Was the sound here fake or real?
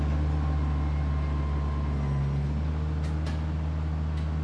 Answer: real